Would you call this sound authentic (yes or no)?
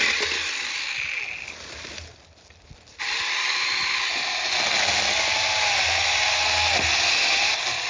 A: yes